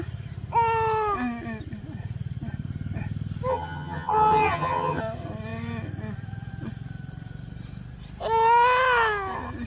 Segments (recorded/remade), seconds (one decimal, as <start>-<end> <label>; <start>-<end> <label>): 0.0-3.5 recorded; 3.5-5.0 remade; 5.0-9.7 recorded